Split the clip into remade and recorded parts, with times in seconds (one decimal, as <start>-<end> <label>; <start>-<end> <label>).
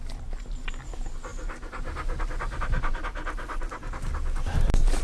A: 0.0-5.0 recorded